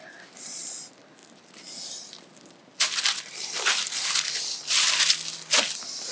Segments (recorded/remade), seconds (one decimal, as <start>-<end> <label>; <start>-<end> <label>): 0.0-6.1 recorded